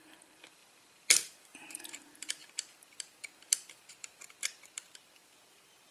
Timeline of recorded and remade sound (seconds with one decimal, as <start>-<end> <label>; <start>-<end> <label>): 0.0-5.9 remade